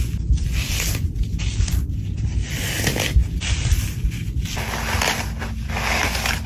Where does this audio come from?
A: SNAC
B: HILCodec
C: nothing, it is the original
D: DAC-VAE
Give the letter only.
C